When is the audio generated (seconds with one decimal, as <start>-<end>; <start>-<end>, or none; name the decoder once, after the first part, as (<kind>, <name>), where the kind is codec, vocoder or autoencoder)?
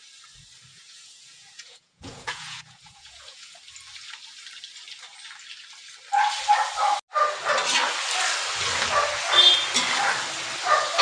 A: 0.7-3.6 (vocoder, Vocos)